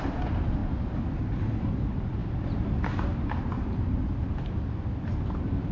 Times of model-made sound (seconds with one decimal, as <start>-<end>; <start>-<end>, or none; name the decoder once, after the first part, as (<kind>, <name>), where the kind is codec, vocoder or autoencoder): none